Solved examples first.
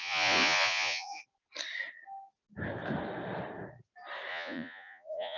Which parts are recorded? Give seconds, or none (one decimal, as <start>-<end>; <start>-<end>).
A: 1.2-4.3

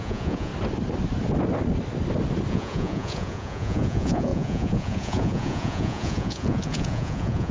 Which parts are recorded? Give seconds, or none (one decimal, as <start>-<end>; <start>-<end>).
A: 0.5-2.5

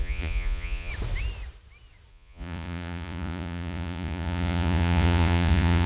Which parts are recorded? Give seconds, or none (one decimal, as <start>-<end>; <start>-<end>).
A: 0.9-2.1

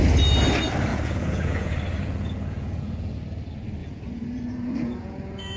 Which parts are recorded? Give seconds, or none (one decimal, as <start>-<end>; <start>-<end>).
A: 0.0-0.9; 3.1-3.8